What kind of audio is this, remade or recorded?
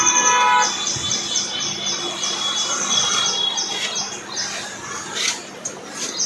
recorded